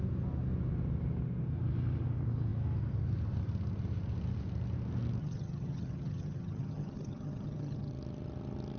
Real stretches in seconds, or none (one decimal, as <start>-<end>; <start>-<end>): 0.0-5.2; 7.9-8.8